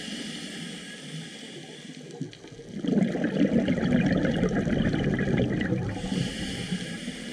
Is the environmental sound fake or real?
real